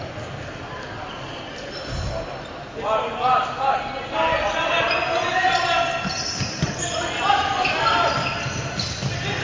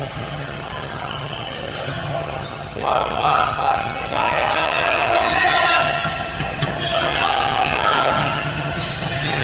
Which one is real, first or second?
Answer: first